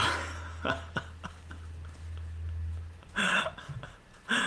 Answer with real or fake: real